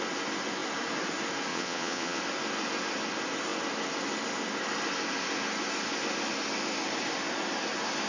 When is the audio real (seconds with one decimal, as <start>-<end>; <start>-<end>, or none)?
0.0-1.5; 2.2-8.1